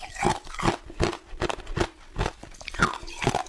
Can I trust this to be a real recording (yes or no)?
yes